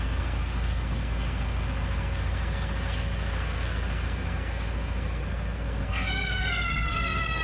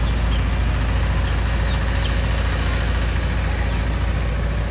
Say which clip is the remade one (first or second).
first